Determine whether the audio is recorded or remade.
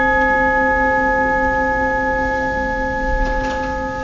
recorded